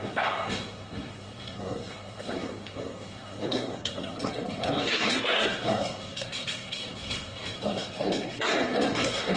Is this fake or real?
fake